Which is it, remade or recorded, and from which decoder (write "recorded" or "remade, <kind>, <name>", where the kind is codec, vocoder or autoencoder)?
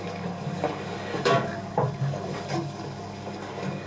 remade, codec, DAC